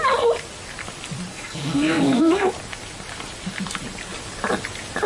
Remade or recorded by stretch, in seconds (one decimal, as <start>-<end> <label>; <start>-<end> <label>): 0.0-1.3 recorded; 1.3-2.5 remade; 2.5-5.1 recorded